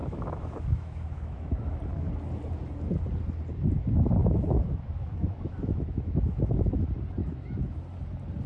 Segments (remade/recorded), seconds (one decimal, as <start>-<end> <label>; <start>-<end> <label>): 0.0-1.8 remade; 1.8-4.2 recorded; 4.2-6.8 remade; 6.8-7.2 recorded; 7.2-7.8 remade; 7.8-8.5 recorded